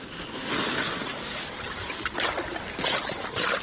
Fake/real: real